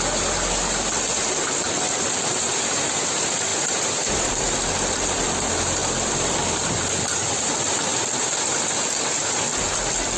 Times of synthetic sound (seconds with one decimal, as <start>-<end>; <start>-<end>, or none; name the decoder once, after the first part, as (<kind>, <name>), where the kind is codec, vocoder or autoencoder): 3.5-4.4 (vocoder, BigVGAN v2); 5.8-7.0